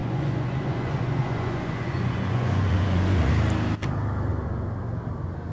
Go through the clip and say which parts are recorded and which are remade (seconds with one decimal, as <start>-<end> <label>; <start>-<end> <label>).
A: 0.0-3.3 remade; 3.3-5.5 recorded